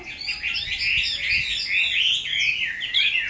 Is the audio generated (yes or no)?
no